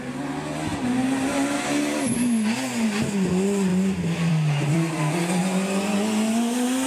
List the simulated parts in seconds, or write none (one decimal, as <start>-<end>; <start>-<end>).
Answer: 4.7-5.4